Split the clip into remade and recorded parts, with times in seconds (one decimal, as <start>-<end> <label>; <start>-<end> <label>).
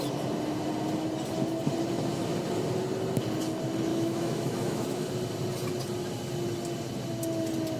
0.0-3.9 recorded; 3.9-5.1 remade; 5.1-7.8 recorded